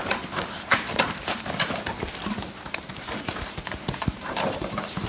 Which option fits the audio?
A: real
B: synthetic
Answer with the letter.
B